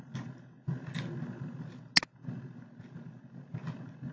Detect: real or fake real